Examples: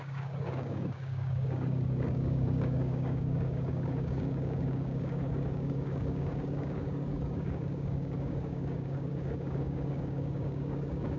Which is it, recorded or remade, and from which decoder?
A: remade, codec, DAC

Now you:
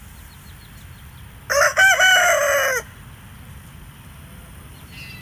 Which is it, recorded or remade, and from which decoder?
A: recorded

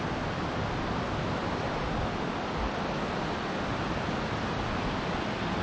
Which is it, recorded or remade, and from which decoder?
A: recorded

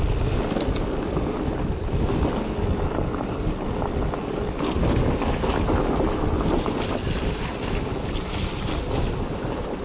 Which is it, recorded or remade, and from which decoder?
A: recorded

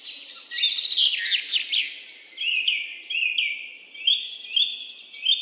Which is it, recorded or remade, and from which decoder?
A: recorded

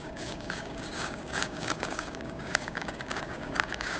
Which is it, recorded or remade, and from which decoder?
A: remade, codec, DAC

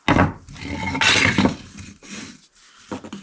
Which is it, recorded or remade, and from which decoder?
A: recorded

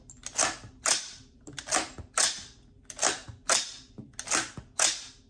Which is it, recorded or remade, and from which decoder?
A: recorded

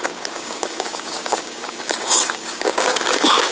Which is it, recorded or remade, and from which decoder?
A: remade, codec, DAC